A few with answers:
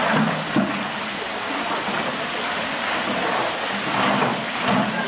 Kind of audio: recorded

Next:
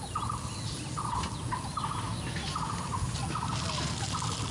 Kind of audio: recorded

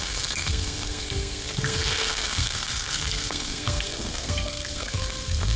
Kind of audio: remade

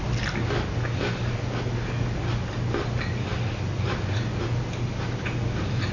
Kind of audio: recorded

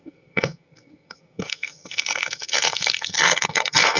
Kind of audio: remade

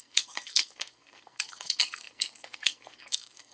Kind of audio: remade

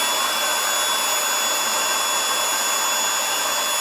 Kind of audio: recorded